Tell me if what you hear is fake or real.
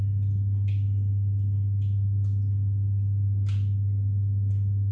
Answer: real